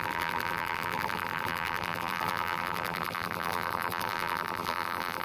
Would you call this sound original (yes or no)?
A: no